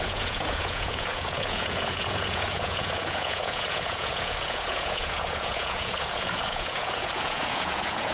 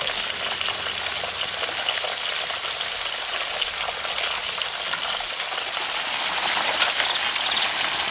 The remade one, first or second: first